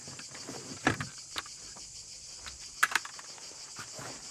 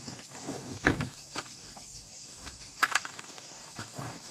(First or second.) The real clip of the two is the first